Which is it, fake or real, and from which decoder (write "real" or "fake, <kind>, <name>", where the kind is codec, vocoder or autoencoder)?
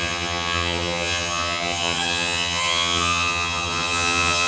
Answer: fake, vocoder, HiFi-GAN